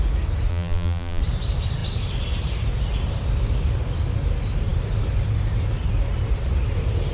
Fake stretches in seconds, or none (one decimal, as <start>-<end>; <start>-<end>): 0.5-1.2